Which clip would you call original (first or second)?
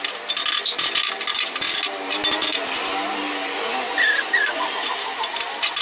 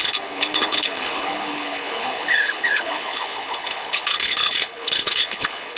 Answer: first